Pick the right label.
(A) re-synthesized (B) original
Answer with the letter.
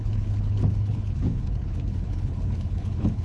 A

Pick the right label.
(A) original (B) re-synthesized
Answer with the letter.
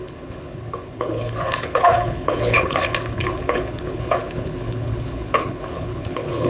B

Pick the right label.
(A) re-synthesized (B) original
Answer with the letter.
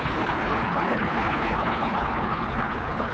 A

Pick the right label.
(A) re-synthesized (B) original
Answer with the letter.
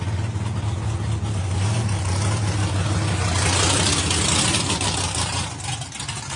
B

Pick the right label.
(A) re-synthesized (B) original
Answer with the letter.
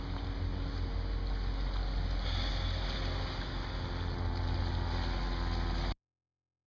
B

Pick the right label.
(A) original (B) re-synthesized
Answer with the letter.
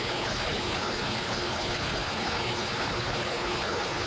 B